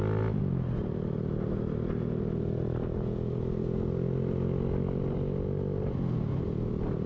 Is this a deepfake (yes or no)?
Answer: no